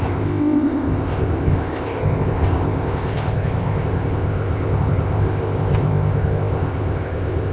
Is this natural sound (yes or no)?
no